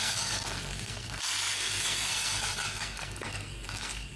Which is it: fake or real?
fake